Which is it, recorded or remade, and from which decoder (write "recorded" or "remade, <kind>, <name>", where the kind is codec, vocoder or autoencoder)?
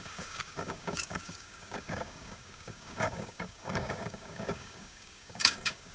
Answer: remade, codec, DAC